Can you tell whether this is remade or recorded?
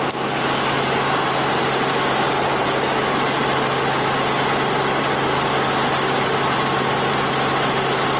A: recorded